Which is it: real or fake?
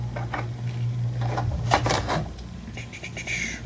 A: real